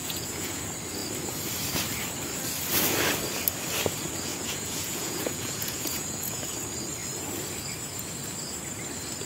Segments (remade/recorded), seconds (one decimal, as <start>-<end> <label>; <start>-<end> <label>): 0.0-0.6 remade; 0.6-4.3 recorded; 4.3-6.4 remade; 6.4-9.3 recorded